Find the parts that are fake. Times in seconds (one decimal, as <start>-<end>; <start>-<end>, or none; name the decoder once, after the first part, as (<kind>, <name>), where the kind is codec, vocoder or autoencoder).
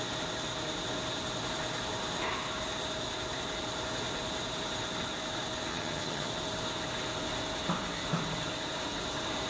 5.7-6.3 (vocoder, HiFi-GAN)